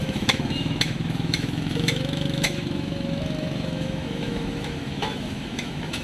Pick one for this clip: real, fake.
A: fake